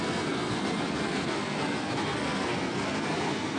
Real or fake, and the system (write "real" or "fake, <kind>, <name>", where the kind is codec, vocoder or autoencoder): fake, codec, SNAC